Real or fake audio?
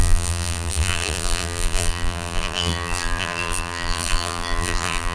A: fake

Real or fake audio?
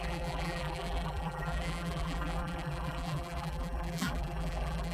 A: fake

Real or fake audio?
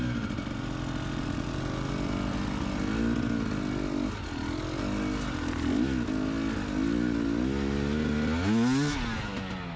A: real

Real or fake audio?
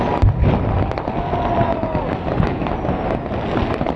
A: real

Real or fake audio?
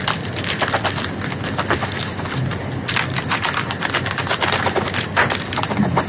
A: real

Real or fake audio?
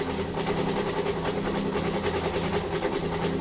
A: real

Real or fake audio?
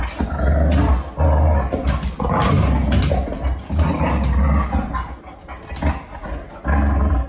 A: real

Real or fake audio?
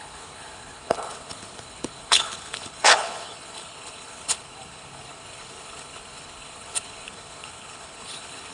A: fake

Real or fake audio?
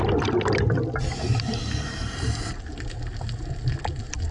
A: real